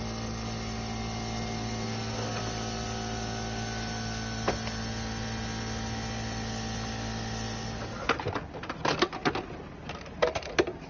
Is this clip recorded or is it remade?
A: recorded